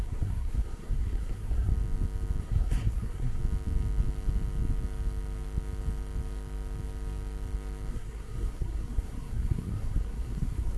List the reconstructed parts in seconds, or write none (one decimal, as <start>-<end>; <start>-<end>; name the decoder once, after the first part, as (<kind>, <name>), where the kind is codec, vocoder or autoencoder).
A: 0.0-1.7 (codec, SNAC); 2.4-3.4; 7.9-10.8